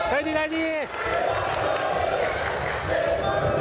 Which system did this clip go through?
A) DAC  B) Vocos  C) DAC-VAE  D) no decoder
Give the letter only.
D